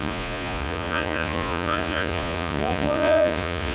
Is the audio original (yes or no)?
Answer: no